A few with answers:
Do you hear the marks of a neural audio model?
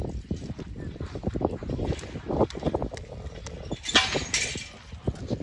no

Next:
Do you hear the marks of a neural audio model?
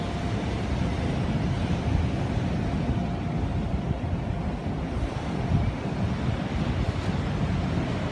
no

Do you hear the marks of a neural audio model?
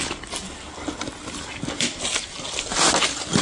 no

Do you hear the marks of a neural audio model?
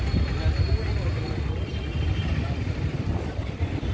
no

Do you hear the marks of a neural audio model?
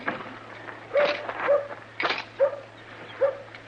no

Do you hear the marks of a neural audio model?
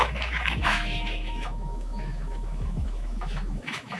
yes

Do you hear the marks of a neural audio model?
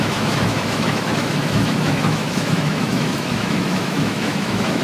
yes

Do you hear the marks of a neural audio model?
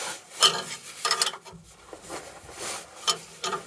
no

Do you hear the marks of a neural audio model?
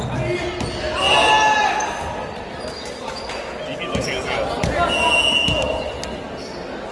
no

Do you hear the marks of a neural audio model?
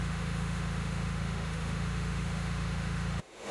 yes